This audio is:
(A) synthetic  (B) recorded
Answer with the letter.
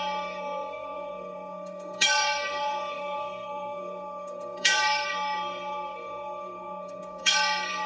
A